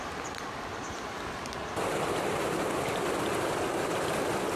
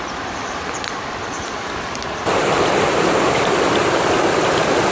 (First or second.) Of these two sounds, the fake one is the second